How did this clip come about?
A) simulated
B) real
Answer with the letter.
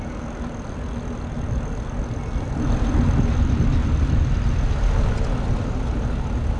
B